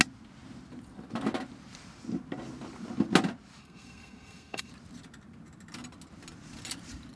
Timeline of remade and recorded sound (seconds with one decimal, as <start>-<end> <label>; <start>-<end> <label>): 0.0-3.6 recorded; 3.6-4.7 remade; 4.7-7.2 recorded